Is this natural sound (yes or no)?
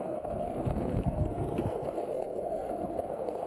no